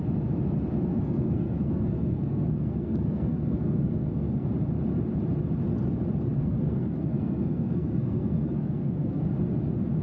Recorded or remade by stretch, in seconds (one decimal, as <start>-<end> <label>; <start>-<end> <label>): 0.0-0.9 recorded; 0.9-4.5 remade; 4.5-6.4 recorded; 6.4-9.2 remade; 9.2-10.0 recorded